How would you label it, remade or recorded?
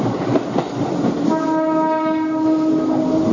recorded